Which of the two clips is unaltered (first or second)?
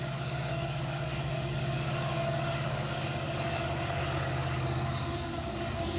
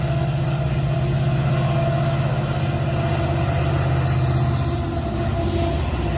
second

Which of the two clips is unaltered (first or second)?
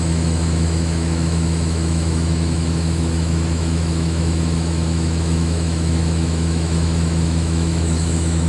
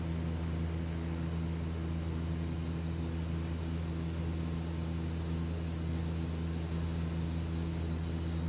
second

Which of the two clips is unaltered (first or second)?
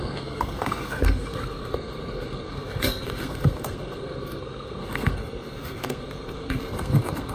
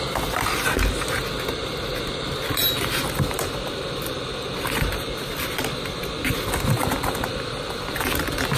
second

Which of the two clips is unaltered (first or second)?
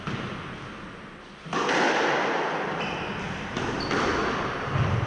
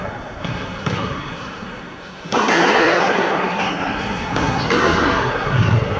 first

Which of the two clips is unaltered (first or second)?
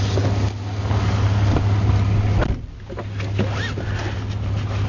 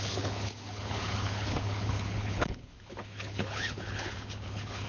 first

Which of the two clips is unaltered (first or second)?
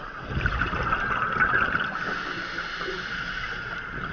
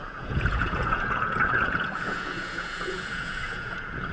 first